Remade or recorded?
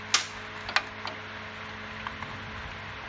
recorded